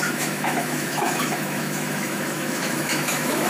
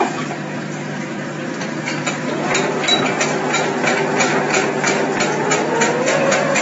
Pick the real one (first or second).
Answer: second